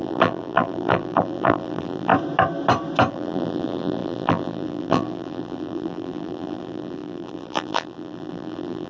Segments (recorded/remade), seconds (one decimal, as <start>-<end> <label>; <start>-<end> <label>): 0.0-2.1 remade; 2.1-3.1 recorded; 3.1-8.9 remade